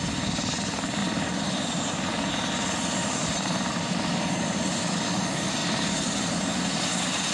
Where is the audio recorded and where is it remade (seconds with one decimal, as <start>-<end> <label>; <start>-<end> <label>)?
0.0-3.0 recorded; 3.0-3.9 remade; 3.9-7.3 recorded